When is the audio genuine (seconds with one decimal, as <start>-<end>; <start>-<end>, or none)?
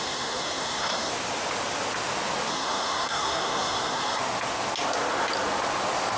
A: 1.1-2.5; 4.2-6.2